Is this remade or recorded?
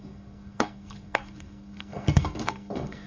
remade